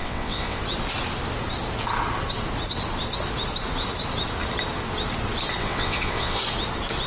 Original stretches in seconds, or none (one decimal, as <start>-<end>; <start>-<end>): 0.6-5.6; 6.4-7.1